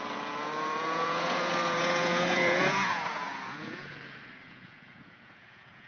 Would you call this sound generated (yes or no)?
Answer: yes